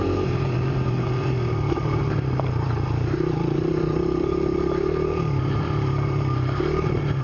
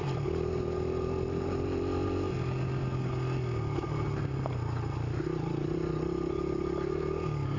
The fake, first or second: first